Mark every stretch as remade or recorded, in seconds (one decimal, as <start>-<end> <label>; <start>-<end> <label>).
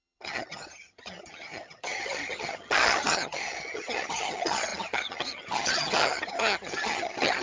0.0-7.4 remade